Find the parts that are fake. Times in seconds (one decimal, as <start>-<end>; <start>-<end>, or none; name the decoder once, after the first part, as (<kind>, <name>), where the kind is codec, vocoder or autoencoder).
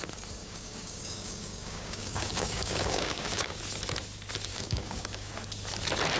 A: 0.4-3.6 (codec, DAC); 4.5-5.3